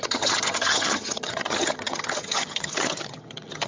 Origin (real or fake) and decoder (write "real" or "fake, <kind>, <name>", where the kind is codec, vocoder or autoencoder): fake, vocoder, HiFi-GAN